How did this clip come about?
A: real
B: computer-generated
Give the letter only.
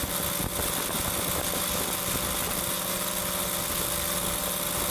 A